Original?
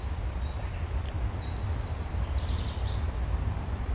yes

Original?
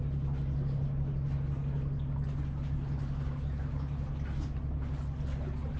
yes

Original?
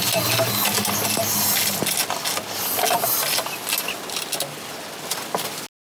yes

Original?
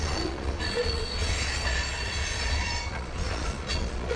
no